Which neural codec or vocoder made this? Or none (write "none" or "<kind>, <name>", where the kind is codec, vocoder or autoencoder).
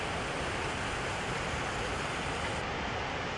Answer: none